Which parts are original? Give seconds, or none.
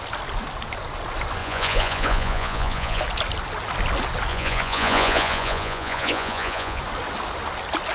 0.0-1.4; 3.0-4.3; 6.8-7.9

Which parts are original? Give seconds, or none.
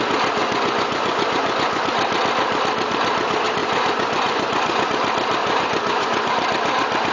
0.0-0.4; 1.8-3.6; 4.9-5.4; 6.3-7.1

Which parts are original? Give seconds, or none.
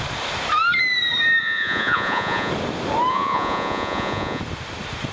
0.0-1.4; 2.5-3.1; 4.4-5.1